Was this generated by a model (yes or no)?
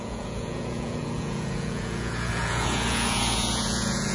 yes